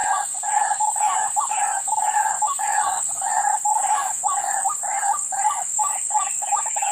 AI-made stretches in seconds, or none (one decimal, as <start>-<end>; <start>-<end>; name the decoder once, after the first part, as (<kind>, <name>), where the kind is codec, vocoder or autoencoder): 0.0-6.9 (codec, DAC)